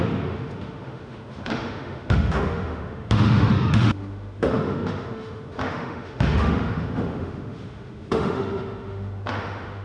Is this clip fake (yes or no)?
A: yes